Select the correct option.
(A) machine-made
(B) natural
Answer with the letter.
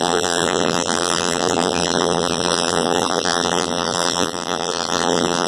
A